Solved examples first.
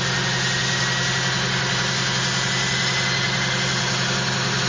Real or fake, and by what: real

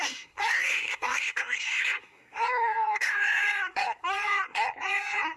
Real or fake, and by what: fake, codec, SNAC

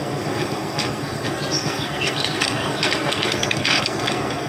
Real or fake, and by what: fake, codec, SNAC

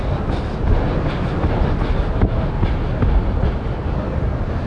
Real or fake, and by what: real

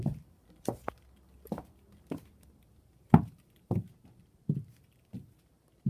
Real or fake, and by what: real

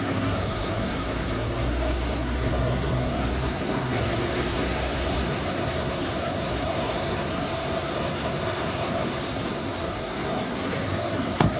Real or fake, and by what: fake, codec, SNAC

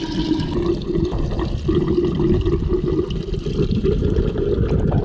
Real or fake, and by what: real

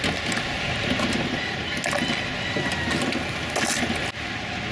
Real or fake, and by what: real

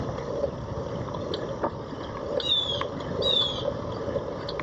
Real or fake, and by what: real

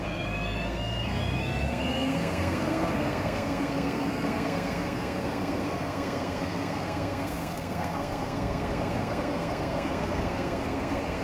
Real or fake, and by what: fake, codec, SNAC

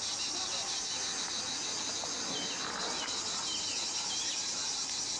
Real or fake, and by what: real